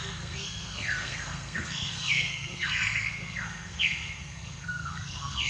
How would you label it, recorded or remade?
remade